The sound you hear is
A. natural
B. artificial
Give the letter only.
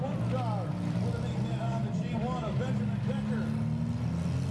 A